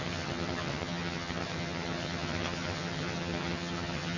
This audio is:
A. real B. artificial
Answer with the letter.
B